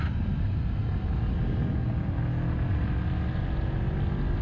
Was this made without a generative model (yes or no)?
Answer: yes